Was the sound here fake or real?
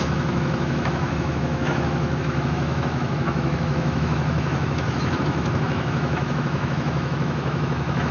fake